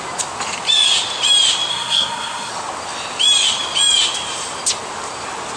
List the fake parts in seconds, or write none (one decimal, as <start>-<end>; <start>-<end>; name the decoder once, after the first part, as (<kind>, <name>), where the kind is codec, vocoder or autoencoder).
1.7-2.5 (codec, SNAC)